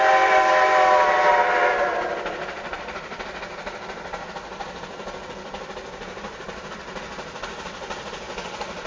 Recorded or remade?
recorded